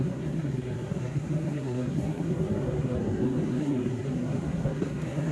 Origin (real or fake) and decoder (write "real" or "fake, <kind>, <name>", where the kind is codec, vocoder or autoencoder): fake, codec, SNAC